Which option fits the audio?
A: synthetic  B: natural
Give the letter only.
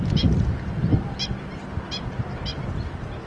B